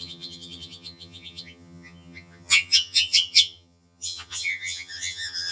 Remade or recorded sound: remade